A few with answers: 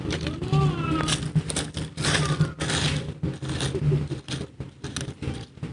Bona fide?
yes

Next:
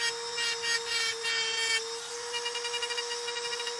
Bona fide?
yes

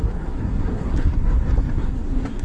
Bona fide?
no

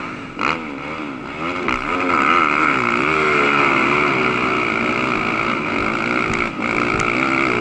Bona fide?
yes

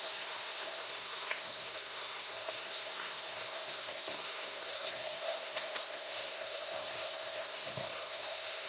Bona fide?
no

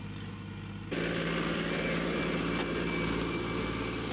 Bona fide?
yes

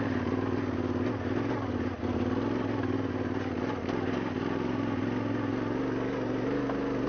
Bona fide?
yes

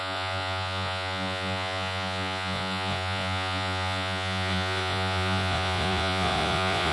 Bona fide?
no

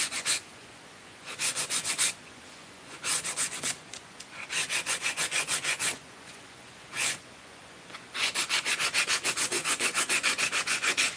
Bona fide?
no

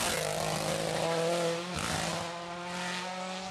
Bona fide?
yes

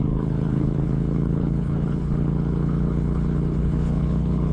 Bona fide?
no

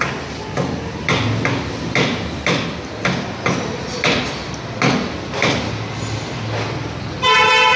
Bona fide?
yes